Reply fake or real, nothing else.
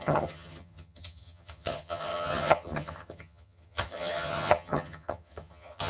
fake